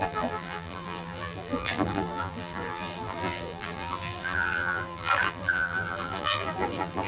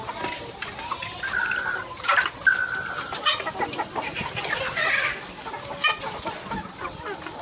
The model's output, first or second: first